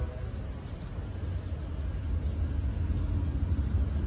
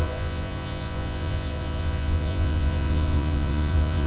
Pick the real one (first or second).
first